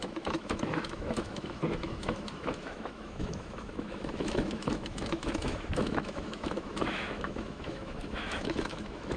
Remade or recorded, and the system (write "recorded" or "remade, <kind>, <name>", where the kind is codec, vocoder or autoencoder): remade, autoencoder, DAC-VAE